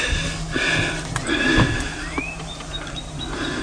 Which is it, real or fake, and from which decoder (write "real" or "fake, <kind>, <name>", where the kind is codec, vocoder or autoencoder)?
real